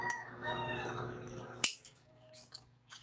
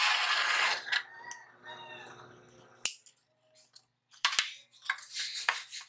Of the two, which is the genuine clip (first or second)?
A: second